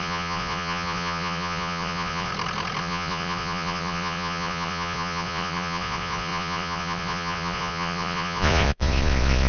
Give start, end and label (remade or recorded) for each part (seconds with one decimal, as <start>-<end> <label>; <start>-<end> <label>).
0.0-2.3 remade; 2.3-2.8 recorded; 2.8-9.5 remade